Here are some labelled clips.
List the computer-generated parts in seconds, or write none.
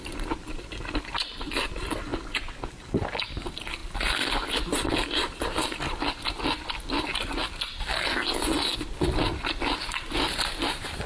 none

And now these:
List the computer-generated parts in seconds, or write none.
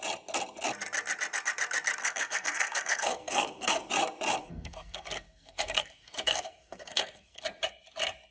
2.0-3.9 (codec, SNAC); 4.4-7.4